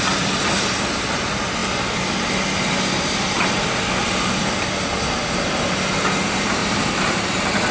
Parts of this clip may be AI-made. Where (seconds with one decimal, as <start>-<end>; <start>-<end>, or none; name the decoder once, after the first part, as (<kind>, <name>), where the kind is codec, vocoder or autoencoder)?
6.6-7.3 (vocoder, BigVGAN v2)